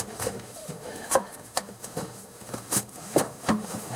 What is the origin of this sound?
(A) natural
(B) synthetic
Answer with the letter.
B